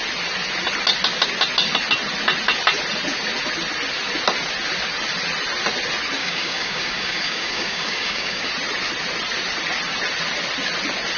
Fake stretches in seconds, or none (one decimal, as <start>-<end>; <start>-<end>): 6.2-8.5